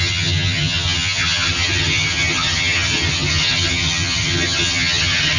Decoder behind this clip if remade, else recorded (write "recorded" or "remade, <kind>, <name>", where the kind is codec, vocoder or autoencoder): remade, vocoder, HiFi-GAN